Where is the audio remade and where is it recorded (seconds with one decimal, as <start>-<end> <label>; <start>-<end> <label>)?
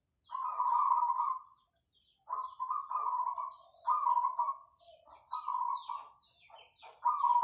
0.0-7.4 recorded